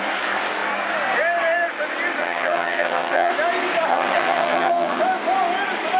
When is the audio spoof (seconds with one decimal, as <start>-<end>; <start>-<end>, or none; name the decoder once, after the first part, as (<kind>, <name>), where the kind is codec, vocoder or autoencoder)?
2.2-3.3 (vocoder, HiFi-GAN); 3.9-5.0